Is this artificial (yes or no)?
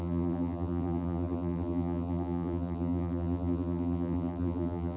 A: yes